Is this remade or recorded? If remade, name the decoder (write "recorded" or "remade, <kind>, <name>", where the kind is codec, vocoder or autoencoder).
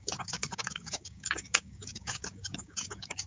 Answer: remade, codec, DAC